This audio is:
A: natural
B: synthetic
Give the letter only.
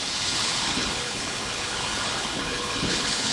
B